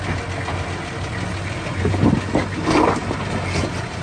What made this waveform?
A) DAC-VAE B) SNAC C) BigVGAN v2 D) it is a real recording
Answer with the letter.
D